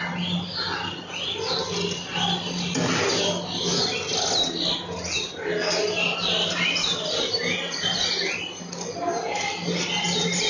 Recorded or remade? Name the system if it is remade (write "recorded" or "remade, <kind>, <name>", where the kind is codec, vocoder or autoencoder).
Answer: recorded